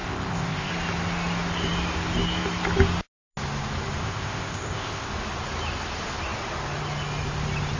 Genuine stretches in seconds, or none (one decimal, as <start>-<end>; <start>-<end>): 0.7-4.0; 5.1-7.8